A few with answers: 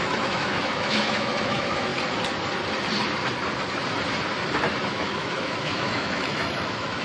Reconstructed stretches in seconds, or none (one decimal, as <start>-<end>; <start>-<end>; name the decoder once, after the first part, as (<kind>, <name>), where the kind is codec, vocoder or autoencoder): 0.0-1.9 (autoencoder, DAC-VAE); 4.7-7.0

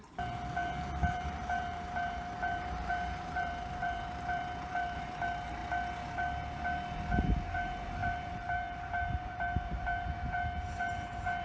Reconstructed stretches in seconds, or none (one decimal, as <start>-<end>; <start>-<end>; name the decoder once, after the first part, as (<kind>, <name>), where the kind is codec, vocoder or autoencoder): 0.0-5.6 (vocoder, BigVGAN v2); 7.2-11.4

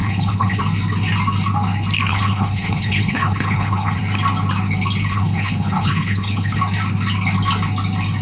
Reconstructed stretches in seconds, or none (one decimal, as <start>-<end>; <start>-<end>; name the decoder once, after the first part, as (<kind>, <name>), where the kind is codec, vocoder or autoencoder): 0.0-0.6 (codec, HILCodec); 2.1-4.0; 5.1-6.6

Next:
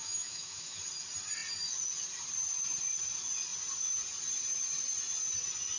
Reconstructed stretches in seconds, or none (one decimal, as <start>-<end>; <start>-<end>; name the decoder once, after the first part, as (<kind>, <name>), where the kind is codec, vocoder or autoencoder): 0.0-0.8 (autoencoder, DAC-VAE)

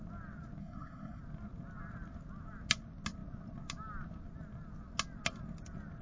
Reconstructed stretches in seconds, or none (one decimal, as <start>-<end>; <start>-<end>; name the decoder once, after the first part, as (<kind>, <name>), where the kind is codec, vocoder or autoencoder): 0.6-1.2 (codec, SNAC)